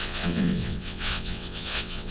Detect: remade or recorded remade